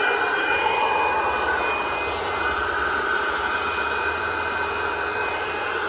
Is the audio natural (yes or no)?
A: no